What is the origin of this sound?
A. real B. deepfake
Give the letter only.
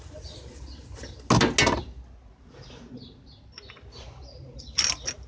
A